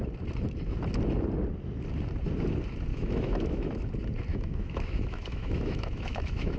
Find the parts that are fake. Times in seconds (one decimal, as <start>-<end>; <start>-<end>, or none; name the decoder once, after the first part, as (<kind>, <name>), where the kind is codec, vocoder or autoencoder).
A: 2.9-3.9 (autoencoder, DAC-VAE); 4.3-6.6